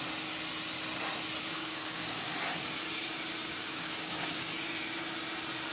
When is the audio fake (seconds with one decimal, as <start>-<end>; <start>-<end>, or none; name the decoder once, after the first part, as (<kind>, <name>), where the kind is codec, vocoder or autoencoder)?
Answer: 1.4-2.4 (codec, DAC); 3.6-4.5